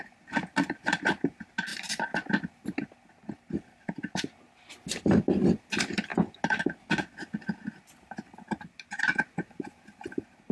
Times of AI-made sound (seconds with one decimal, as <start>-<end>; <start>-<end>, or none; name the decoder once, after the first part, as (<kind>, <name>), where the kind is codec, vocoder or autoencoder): none